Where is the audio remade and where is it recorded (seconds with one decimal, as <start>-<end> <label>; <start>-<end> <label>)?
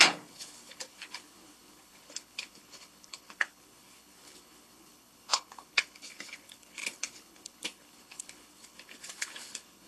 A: 0.0-9.9 remade